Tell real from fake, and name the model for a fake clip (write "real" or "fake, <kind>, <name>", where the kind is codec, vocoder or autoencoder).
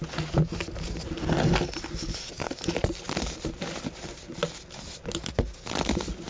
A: real